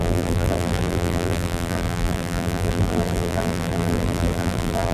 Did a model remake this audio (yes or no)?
yes